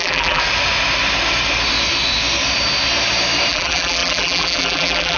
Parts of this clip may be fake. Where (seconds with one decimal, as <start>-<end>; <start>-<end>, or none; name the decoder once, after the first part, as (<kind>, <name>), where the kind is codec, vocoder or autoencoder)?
0.0-0.4 (vocoder, BigVGAN v2); 3.5-5.2